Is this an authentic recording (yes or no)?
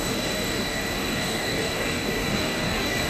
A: no